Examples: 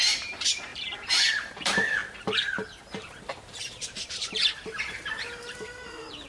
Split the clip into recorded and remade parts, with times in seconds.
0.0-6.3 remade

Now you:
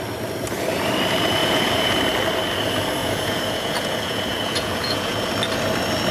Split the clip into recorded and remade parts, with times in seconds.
0.0-1.4 recorded; 1.4-2.0 remade; 2.0-3.0 recorded; 3.0-5.3 remade; 5.3-6.1 recorded

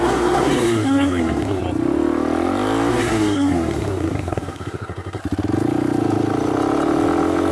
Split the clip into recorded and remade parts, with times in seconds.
0.0-1.6 remade; 1.6-2.9 recorded; 2.9-5.2 remade; 5.2-7.5 recorded